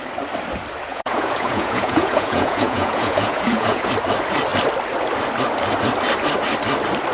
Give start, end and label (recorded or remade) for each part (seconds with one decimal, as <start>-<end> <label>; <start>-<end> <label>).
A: 0.0-0.9 recorded; 0.9-3.9 remade; 3.9-7.1 recorded